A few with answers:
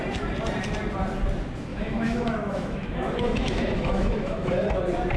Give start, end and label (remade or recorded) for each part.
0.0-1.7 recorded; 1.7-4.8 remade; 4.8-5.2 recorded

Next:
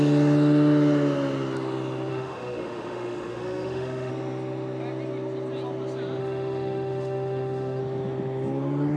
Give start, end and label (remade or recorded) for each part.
0.0-2.1 recorded; 2.1-4.1 remade; 4.1-6.2 recorded; 6.2-7.8 remade; 7.8-9.0 recorded

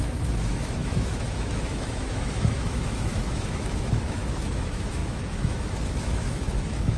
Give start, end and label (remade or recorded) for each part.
0.0-7.0 remade

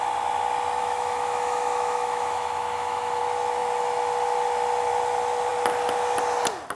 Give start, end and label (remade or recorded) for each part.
0.0-0.8 recorded; 0.8-3.2 remade; 3.2-6.8 recorded

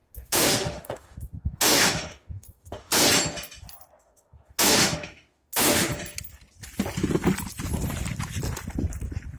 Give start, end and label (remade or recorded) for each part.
0.0-2.9 remade; 2.9-4.0 recorded; 4.0-5.9 remade; 5.9-9.4 recorded

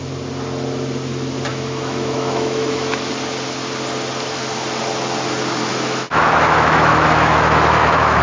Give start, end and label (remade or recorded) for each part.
0.0-1.5 recorded; 1.5-3.1 remade; 3.1-5.7 recorded; 5.7-8.2 remade

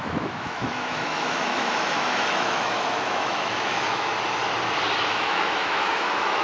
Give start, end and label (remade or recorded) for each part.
0.0-4.1 remade; 4.1-5.0 recorded; 5.0-6.4 remade